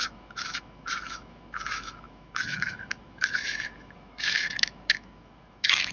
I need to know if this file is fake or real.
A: fake